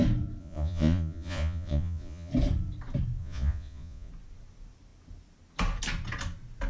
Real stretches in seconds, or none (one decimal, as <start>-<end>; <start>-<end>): 0.0-0.4; 2.3-3.2; 4.1-6.7